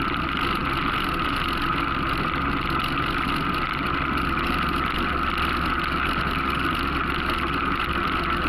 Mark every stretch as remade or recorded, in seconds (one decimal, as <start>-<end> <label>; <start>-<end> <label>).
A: 0.0-8.5 recorded